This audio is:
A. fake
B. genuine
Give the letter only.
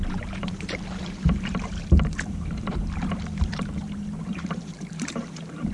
A